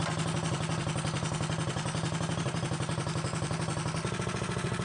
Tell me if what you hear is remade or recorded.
recorded